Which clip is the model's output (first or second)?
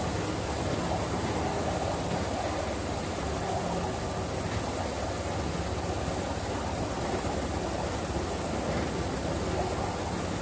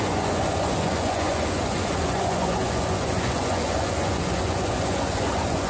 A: second